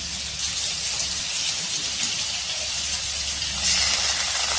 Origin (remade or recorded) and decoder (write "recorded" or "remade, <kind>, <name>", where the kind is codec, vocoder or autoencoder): recorded